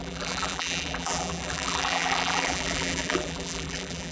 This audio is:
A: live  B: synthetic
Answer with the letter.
B